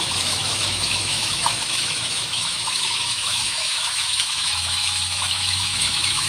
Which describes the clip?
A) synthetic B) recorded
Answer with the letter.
A